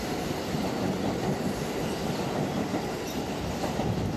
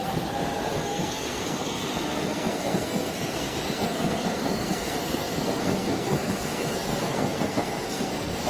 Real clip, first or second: first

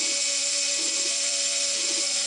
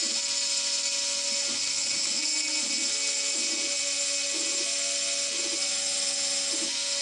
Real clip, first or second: second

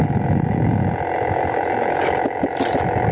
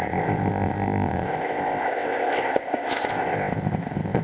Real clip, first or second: first